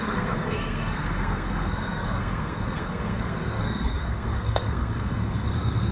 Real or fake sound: fake